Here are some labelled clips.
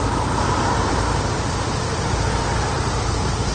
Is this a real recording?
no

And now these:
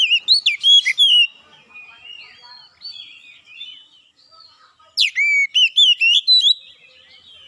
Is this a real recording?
yes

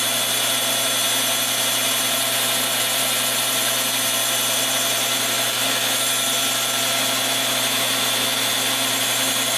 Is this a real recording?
yes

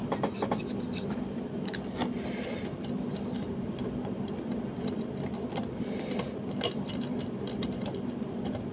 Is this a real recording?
no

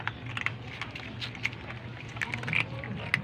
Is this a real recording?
yes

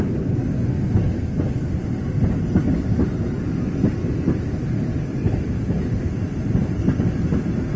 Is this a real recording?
yes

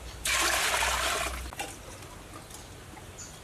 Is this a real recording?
yes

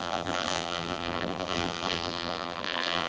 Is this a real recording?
no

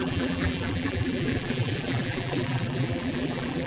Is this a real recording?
no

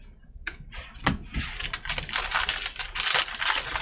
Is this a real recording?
yes